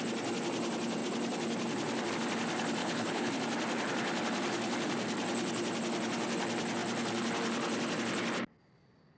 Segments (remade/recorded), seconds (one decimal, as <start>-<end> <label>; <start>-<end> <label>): 0.0-2.8 recorded; 2.8-3.3 remade; 3.3-9.2 recorded